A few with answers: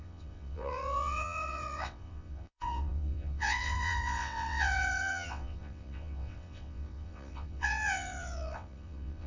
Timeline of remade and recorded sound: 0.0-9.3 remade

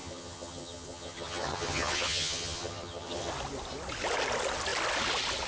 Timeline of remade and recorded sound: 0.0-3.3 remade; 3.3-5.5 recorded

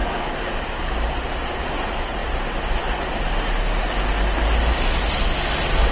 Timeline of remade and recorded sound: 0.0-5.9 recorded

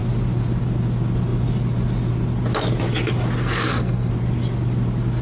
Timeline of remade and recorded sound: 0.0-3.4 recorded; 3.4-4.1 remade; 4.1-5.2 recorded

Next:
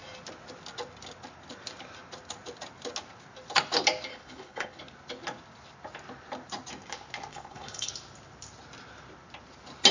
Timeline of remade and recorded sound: 0.0-4.1 recorded; 4.1-4.8 remade; 4.8-7.3 recorded; 7.3-7.9 remade; 7.9-9.9 recorded

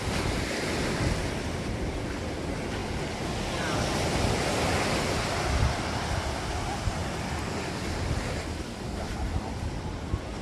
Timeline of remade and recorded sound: 0.0-10.4 recorded

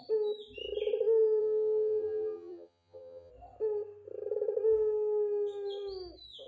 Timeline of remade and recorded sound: 0.0-1.4 recorded; 1.4-3.3 remade; 3.3-6.5 recorded